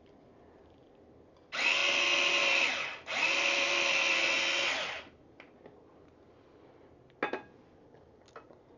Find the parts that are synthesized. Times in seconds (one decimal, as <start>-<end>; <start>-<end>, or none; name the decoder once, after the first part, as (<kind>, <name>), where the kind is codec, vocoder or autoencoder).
none